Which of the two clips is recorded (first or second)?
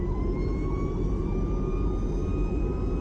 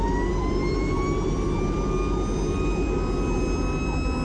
second